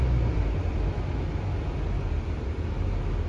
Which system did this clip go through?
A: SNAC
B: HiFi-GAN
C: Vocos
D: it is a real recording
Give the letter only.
D